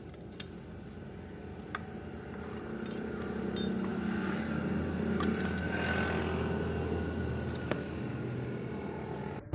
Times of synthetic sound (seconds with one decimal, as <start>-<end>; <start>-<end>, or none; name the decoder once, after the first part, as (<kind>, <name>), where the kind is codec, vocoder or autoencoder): none